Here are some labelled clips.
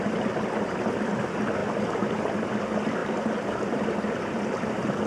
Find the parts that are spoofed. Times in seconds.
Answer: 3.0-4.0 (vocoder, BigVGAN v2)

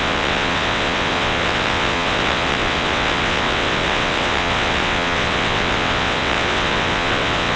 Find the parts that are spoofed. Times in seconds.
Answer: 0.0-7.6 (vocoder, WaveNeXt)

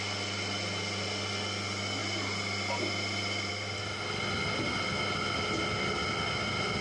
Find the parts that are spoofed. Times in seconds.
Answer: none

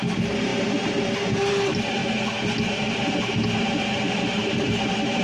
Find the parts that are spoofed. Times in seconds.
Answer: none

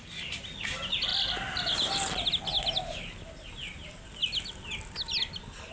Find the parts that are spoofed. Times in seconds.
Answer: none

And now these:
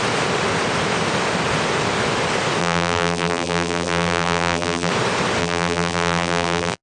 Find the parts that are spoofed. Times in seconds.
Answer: 2.6-4.9 (vocoder, BigVGAN v2); 5.4-6.8

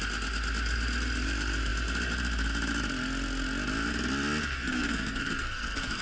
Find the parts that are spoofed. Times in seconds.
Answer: 4.4-6.0 (codec, SNAC)

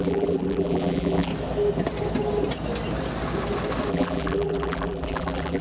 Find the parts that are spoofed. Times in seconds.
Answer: 0.0-1.3 (vocoder, BigVGAN v2); 3.9-5.6